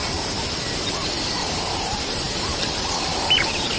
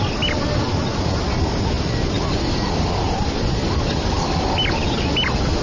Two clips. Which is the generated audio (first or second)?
first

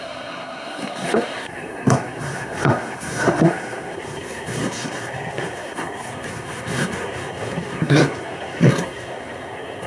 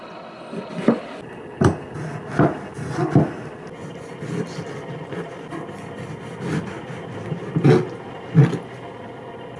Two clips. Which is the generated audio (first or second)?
first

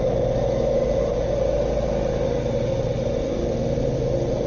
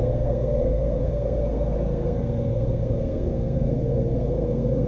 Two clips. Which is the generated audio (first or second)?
second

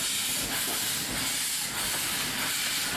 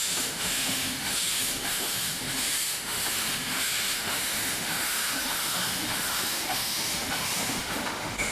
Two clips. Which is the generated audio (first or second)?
second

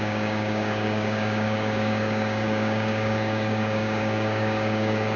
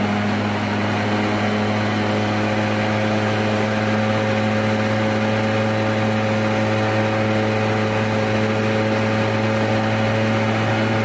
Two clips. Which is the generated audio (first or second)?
first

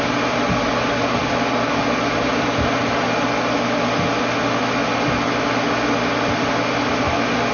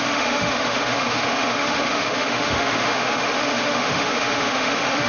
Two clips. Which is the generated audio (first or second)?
second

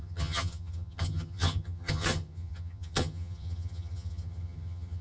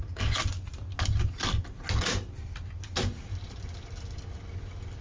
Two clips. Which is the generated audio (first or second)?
first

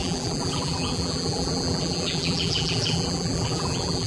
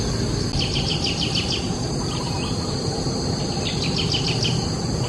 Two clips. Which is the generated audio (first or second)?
first